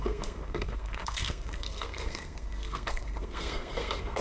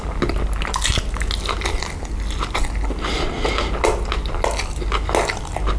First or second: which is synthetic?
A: first